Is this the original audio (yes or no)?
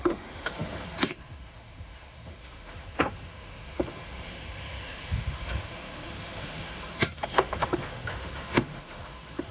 no